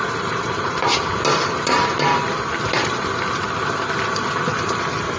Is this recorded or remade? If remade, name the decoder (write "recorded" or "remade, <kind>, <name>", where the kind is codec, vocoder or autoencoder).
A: recorded